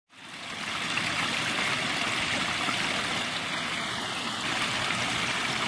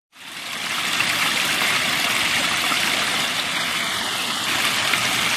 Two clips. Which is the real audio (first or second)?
first